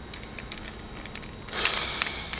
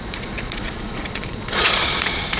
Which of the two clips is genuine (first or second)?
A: first